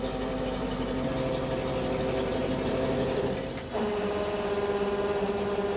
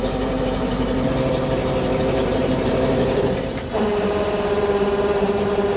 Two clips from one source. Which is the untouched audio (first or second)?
first